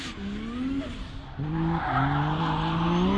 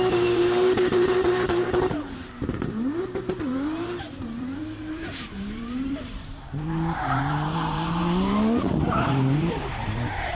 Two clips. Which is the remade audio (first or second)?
second